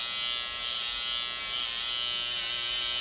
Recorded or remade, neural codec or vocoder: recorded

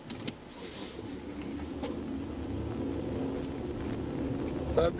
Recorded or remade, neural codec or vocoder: recorded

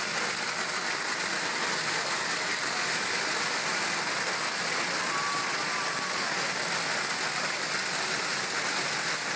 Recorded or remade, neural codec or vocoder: recorded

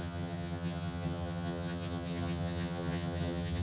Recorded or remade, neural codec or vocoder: remade, vocoder, HiFi-GAN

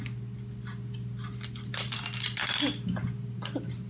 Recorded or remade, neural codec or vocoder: recorded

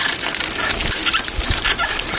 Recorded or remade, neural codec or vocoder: recorded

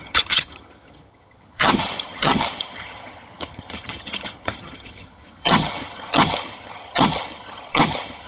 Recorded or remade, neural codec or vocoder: remade, vocoder, HiFi-GAN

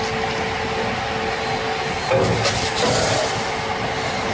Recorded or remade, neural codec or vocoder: recorded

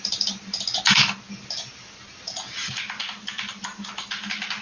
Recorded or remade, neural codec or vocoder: recorded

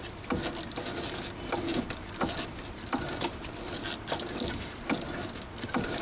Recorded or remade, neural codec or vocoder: recorded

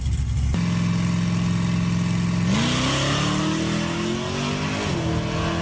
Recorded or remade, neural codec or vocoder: recorded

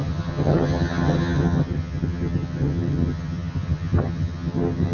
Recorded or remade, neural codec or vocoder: remade, vocoder, HiFi-GAN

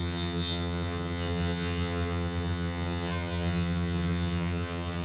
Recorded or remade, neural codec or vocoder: remade, vocoder, HiFi-GAN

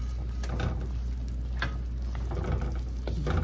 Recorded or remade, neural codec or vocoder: recorded